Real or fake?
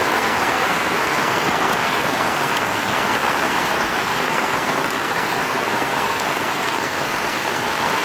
fake